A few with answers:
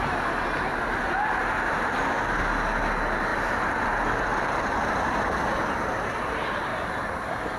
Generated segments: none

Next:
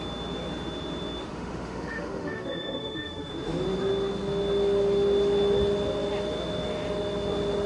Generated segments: 1.2-3.3 (autoencoder, DAC-VAE)